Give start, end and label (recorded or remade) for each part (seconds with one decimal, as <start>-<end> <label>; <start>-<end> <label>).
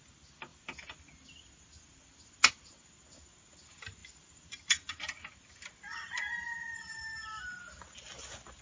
0.0-8.6 recorded